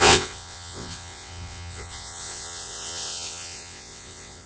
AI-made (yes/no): yes